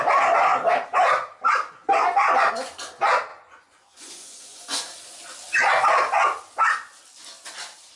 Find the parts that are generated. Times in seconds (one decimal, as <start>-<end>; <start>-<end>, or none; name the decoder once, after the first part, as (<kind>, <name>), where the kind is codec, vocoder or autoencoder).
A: 3.3-4.9 (vocoder, Vocos)